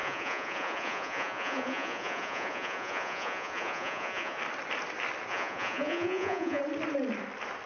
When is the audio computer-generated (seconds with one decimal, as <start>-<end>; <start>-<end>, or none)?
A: 0.0-4.4; 5.3-6.6